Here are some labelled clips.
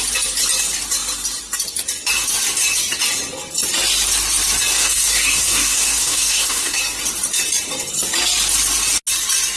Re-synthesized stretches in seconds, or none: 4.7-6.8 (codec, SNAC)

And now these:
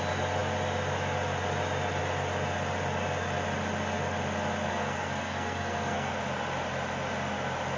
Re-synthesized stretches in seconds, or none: 4.7-6.1 (codec, SNAC)

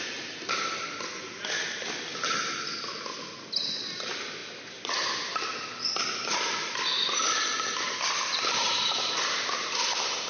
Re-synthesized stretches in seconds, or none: none

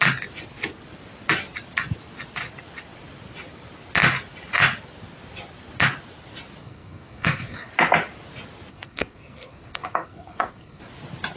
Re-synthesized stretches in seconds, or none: 6.6-7.7 (codec, SNAC); 8.7-10.8

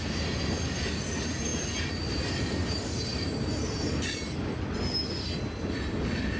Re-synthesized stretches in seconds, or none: none